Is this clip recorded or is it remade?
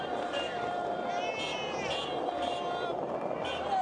recorded